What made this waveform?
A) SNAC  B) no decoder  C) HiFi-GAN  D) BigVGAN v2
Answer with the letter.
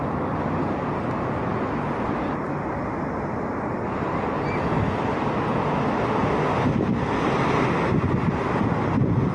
B